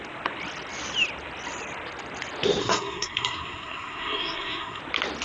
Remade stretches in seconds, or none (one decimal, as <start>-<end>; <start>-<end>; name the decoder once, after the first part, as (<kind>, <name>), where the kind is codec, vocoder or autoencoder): 2.6-4.8 (codec, SNAC)